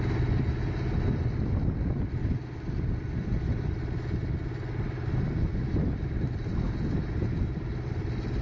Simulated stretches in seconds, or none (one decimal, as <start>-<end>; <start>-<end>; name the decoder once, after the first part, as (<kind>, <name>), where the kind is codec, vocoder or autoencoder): none